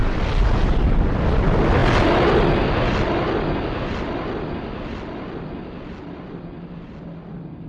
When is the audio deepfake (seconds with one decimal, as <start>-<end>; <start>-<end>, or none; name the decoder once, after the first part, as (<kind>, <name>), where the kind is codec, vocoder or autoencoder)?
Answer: none